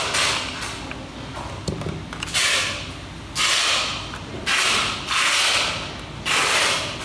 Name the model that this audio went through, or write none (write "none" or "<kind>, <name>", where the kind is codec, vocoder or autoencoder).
none